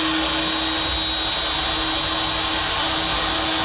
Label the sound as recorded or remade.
recorded